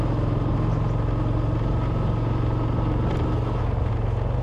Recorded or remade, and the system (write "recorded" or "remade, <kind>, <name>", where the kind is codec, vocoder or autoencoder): recorded